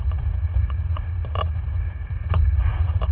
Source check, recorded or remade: remade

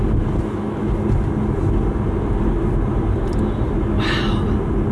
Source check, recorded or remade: recorded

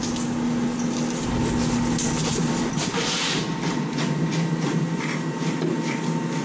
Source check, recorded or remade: recorded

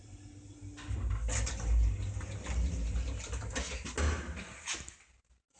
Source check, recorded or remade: recorded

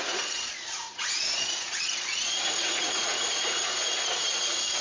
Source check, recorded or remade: remade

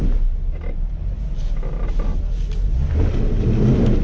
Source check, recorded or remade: recorded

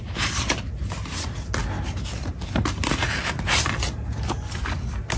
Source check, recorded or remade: recorded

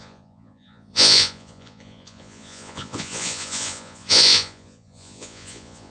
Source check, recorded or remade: remade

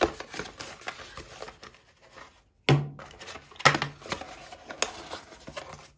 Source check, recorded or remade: recorded